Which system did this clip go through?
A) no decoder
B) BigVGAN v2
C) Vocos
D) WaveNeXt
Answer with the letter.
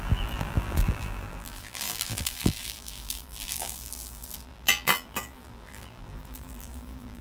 B